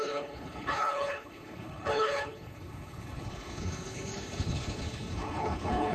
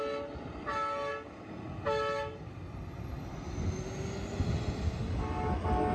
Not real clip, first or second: first